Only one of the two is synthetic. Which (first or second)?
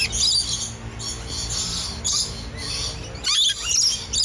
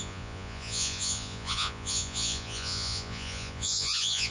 second